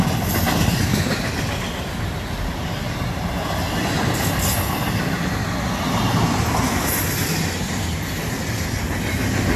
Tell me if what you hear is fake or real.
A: real